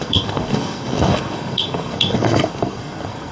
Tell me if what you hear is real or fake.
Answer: fake